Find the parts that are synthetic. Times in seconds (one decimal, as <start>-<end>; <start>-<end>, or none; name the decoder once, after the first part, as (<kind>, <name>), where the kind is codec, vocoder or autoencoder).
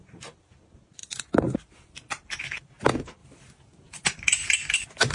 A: 1.0-2.4 (vocoder, BigVGAN v2); 3.2-4.5